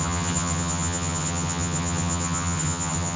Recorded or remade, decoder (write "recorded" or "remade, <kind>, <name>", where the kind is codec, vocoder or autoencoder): remade, vocoder, HiFi-GAN